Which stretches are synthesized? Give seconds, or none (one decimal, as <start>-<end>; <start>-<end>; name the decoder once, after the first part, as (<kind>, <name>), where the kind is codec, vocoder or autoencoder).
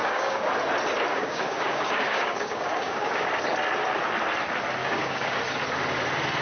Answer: 0.0-0.5 (codec, DAC); 1.1-3.3; 4.8-5.4